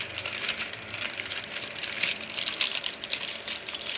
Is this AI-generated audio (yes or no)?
yes